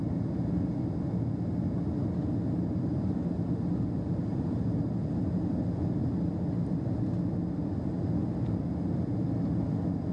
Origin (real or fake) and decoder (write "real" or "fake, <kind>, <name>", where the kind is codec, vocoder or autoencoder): real